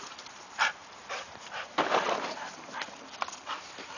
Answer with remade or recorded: remade